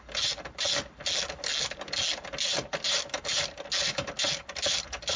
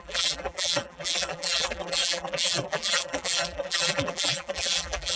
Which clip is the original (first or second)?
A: first